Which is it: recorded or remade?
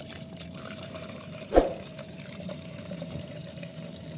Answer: remade